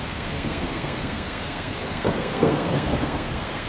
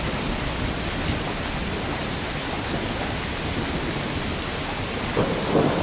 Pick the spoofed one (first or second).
first